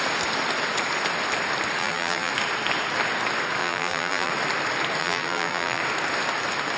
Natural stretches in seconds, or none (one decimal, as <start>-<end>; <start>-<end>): 0.0-1.8; 2.3-3.6; 4.3-5.0; 5.8-6.8